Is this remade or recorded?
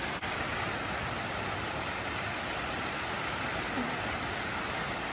recorded